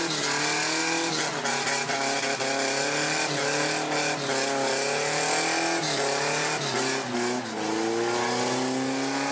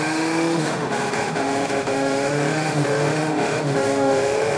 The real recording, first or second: first